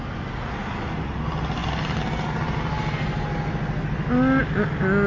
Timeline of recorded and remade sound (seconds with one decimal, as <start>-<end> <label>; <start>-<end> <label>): 0.0-5.1 recorded